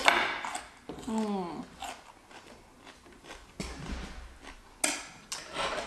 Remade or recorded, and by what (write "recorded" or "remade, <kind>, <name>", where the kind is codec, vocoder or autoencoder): recorded